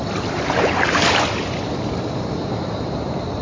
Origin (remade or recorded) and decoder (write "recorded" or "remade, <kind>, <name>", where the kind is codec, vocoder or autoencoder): remade, vocoder, BigVGAN v2